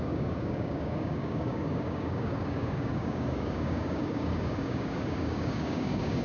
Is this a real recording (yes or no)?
no